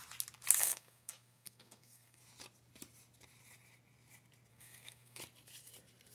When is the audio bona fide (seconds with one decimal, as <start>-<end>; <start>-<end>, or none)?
0.0-0.6; 2.2-4.5; 5.2-6.1